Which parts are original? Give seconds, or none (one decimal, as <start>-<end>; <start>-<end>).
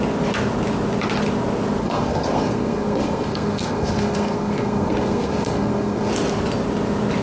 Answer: 0.0-1.8; 6.1-7.2